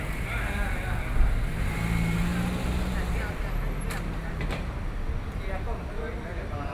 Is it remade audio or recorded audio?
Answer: recorded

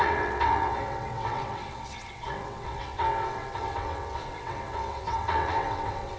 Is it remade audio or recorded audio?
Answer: remade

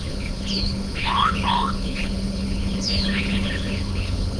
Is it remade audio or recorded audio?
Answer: remade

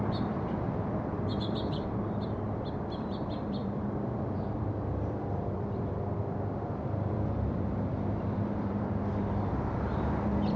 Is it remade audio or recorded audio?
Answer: remade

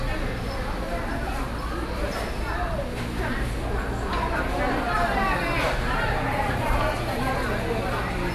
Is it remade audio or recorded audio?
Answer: recorded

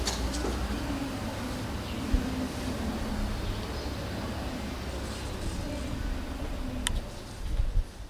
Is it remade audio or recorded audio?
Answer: recorded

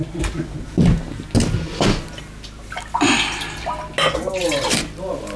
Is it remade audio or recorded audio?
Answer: recorded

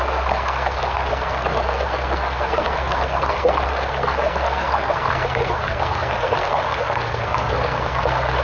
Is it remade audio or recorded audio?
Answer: remade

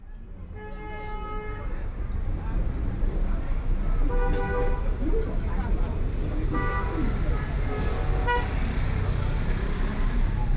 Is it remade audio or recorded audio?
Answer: recorded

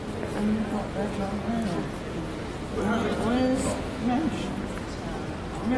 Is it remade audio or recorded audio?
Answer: recorded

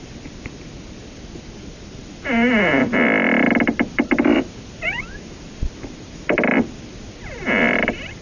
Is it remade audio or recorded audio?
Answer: recorded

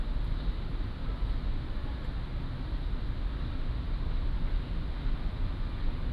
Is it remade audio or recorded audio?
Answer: recorded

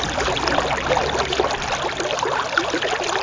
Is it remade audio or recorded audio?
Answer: recorded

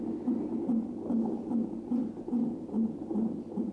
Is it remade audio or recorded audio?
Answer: recorded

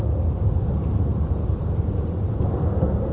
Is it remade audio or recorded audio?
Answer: recorded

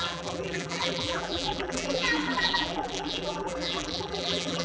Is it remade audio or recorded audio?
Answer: remade